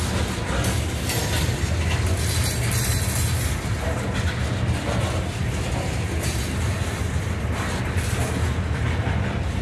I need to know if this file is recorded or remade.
recorded